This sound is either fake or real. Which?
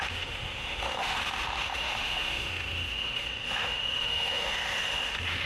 fake